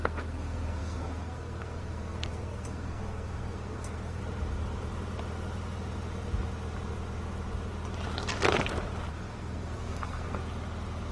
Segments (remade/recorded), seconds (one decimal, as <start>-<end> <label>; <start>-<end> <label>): 0.0-4.2 remade; 4.2-9.1 recorded; 9.1-10.4 remade; 10.4-11.1 recorded